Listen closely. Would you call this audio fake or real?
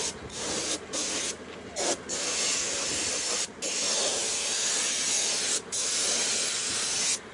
real